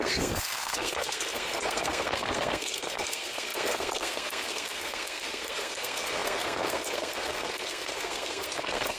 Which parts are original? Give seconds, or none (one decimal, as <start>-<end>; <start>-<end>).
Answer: none